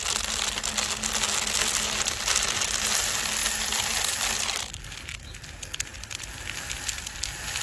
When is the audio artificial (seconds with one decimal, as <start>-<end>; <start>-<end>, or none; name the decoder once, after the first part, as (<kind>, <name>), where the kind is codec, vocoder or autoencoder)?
none